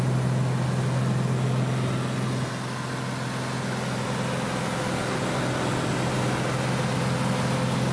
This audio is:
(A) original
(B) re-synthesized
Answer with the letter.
A